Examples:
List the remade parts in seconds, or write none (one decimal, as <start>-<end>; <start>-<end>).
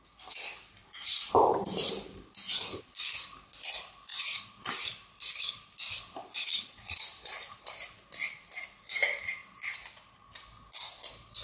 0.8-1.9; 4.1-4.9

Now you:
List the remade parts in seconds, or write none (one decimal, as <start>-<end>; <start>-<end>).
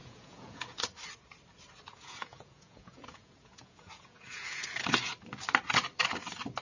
0.0-0.8; 1.9-4.6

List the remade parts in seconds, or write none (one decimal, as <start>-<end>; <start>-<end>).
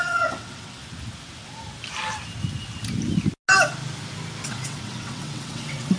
0.0-0.8; 4.4-6.0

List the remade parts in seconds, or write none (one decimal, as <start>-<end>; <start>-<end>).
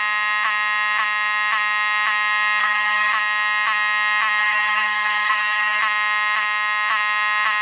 2.6-3.1; 4.4-5.8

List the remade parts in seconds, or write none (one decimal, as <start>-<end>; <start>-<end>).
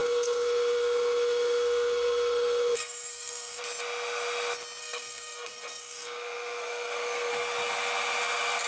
0.0-3.6; 4.8-7.3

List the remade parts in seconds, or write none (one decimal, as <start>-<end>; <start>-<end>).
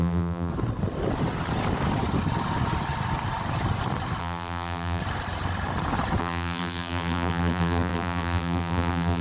0.0-0.5; 4.2-5.0; 6.2-9.2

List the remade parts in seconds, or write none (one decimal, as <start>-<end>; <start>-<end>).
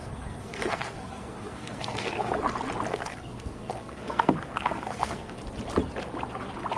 0.0-2.3; 2.9-5.4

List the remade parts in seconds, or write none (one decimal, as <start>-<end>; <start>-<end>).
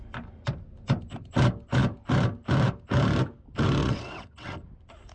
3.8-4.5